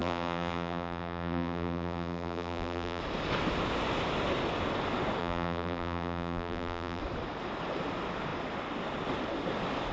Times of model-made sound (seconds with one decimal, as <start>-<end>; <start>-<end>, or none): 0.0-3.0; 5.2-7.0

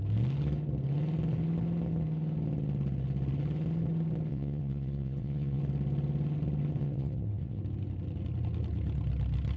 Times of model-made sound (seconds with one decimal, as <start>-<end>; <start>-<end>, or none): 4.3-5.6; 6.8-7.6